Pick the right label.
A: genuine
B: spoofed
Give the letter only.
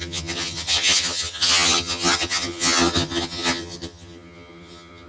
B